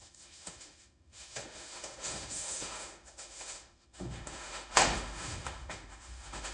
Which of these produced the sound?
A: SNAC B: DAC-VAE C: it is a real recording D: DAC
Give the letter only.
B